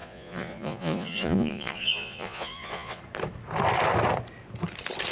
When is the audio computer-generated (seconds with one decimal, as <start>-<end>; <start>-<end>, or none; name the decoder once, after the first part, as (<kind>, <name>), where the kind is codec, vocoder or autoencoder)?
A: 0.0-3.0 (vocoder, Vocos)